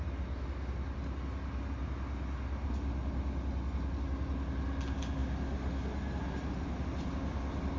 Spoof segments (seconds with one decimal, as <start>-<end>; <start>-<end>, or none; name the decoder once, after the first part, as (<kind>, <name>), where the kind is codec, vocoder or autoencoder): none